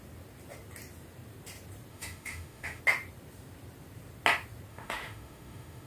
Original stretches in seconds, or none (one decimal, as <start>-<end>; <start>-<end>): 0.0-1.9; 2.8-4.7